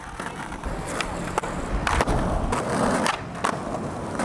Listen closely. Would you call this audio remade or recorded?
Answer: recorded